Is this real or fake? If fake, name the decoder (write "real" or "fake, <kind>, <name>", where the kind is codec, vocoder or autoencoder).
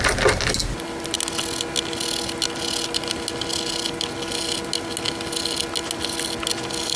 real